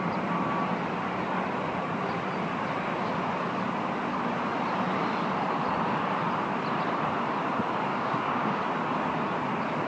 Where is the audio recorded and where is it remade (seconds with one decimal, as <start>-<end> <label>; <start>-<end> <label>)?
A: 0.0-7.9 recorded; 7.9-8.6 remade; 8.6-9.9 recorded